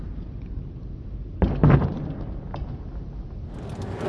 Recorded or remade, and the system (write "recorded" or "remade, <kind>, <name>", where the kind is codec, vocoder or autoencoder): recorded